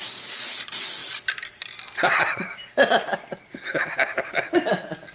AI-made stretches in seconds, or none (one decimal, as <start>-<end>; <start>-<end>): 1.0-2.2